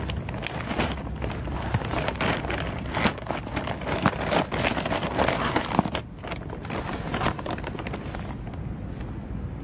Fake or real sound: real